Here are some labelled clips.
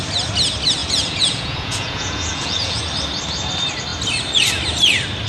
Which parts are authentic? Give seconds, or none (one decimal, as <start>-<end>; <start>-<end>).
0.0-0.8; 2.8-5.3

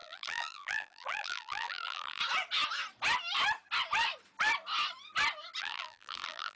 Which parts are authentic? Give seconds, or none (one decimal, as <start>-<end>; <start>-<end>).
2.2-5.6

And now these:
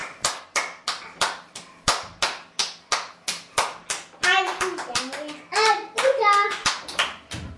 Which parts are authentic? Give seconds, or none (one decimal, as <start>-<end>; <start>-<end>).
0.0-7.6

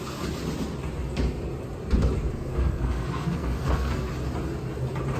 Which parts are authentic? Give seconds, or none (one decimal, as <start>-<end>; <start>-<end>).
0.0-2.3; 4.1-5.2